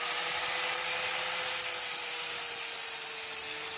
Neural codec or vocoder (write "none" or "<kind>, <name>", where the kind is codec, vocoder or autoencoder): none